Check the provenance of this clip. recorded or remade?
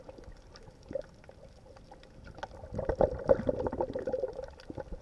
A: recorded